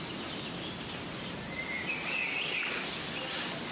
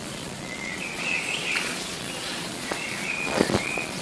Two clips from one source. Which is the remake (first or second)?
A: second